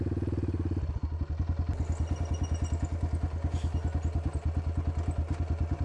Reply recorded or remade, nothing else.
recorded